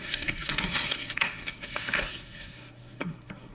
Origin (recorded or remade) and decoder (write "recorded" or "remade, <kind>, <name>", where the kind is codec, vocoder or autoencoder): remade, codec, SNAC